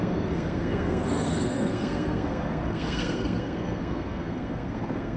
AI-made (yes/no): yes